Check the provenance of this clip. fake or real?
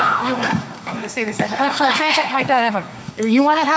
fake